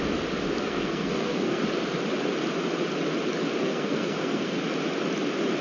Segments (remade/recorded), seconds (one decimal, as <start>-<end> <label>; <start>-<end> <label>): 0.0-0.6 recorded; 0.6-1.6 remade; 1.6-3.6 recorded; 3.6-4.6 remade; 4.6-5.6 recorded